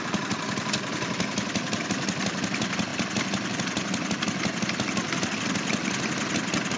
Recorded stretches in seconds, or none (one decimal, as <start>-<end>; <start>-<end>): 0.0-6.8